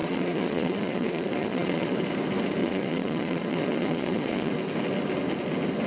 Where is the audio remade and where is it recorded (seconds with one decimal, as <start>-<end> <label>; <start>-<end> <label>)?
0.0-2.0 remade; 2.0-2.6 recorded; 2.6-4.5 remade; 4.5-5.9 recorded